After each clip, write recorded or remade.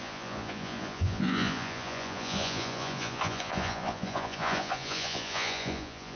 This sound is remade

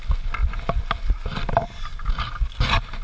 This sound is recorded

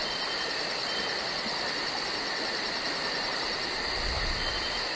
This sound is recorded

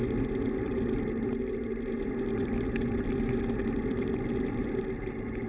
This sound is recorded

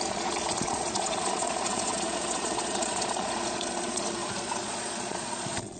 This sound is remade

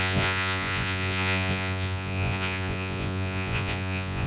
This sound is remade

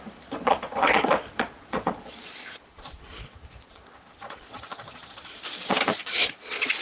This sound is remade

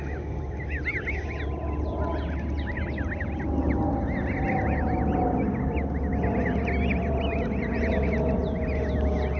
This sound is recorded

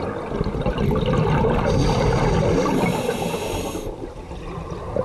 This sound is recorded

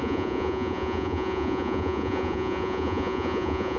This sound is remade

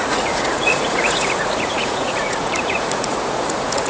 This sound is remade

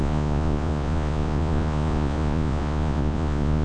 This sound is remade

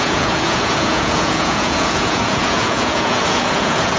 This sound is remade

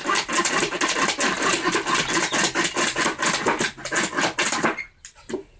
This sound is recorded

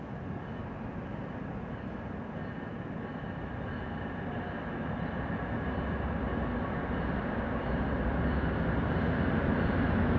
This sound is recorded